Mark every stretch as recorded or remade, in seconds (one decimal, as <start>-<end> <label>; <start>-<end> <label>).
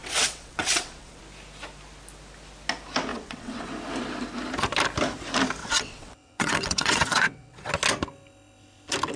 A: 0.0-1.2 remade; 1.2-3.1 recorded; 3.1-3.7 remade; 3.7-5.6 recorded; 5.6-7.7 remade; 7.7-9.2 recorded